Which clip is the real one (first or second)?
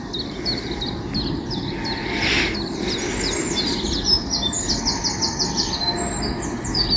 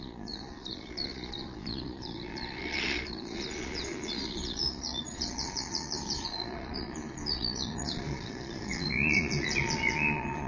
first